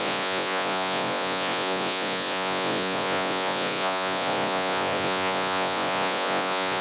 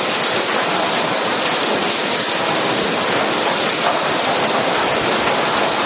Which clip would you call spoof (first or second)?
first